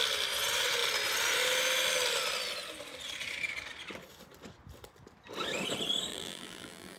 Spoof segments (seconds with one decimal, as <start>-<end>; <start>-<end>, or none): 6.1-7.0